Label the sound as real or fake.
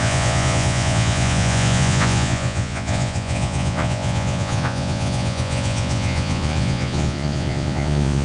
fake